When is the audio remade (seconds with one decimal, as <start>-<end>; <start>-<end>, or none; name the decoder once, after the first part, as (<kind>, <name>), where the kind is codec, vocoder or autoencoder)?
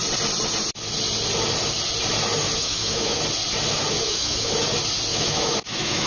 2.6-3.2 (autoencoder, DAC-VAE); 4.0-4.5; 5.1-6.1